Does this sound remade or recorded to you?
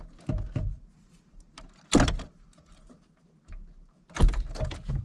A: recorded